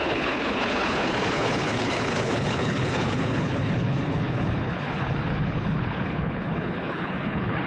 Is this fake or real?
fake